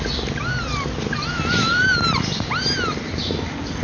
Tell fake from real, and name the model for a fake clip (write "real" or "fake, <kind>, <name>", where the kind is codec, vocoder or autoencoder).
real